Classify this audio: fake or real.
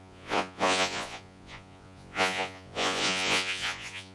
fake